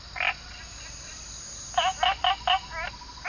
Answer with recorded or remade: recorded